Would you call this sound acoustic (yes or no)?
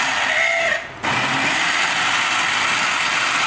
yes